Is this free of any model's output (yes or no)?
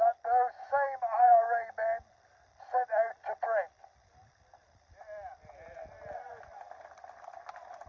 yes